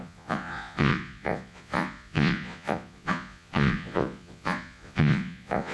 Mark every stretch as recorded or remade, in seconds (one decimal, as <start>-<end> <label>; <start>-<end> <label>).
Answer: 0.0-5.7 remade